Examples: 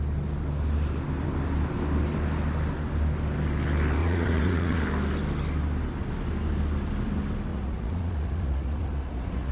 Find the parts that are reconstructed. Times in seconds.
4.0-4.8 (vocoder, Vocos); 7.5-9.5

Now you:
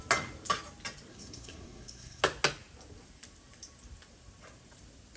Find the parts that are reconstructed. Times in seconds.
1.1-2.2 (codec, SNAC)

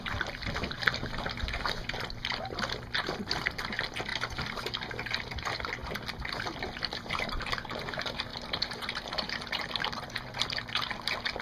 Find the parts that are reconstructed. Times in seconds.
0.0-4.1 (vocoder, BigVGAN v2); 4.9-5.8; 6.8-8.3; 9.8-11.4

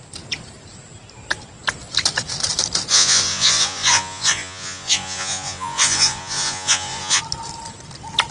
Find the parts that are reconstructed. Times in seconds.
2.9-7.2 (vocoder, Vocos)

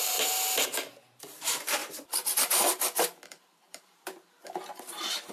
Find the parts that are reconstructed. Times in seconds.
0.0-5.3 (vocoder, BigVGAN v2)

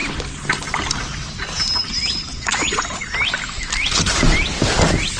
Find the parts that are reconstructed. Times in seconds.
2.3-2.8 (vocoder, Vocos)

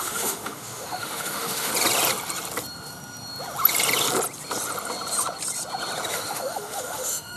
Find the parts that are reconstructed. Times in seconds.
0.0-1.7 (autoencoder, DAC-VAE); 6.1-7.4